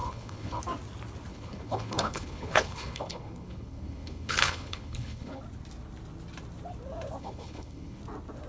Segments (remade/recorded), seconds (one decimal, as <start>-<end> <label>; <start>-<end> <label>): 0.0-0.6 remade; 0.6-1.3 recorded; 1.3-5.4 remade; 5.4-7.2 recorded; 7.2-8.0 remade; 8.0-8.5 recorded